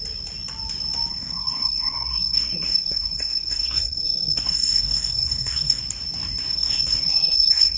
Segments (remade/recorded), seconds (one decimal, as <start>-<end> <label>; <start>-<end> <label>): 0.0-1.1 recorded; 1.1-5.8 remade; 5.8-6.5 recorded; 6.5-7.8 remade